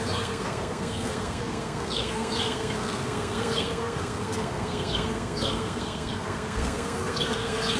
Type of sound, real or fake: fake